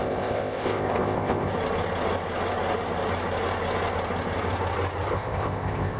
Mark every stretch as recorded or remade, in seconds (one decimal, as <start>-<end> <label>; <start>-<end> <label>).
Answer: 0.0-1.5 remade; 1.5-5.1 recorded; 5.1-6.0 remade